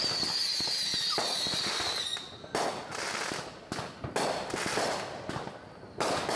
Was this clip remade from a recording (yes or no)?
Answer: no